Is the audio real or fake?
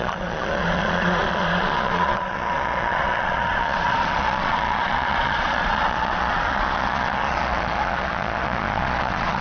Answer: fake